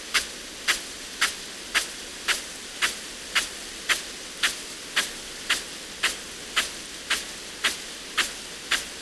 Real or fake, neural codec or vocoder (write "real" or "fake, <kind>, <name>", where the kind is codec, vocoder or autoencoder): real